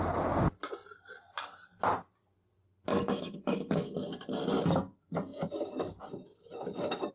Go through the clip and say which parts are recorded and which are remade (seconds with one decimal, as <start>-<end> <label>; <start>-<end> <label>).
0.0-2.9 recorded; 2.9-3.9 remade; 3.9-7.1 recorded